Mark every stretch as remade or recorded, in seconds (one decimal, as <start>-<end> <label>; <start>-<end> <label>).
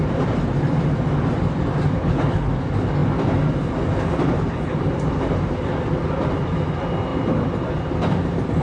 0.0-2.0 recorded; 2.0-2.5 remade; 2.5-8.6 recorded